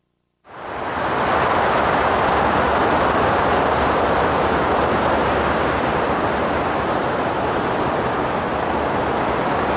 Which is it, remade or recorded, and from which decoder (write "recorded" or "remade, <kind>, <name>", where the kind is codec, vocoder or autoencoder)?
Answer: recorded